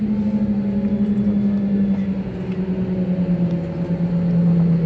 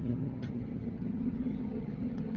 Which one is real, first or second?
first